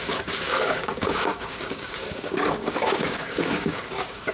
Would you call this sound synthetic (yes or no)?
yes